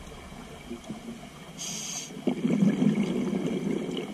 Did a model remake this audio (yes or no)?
no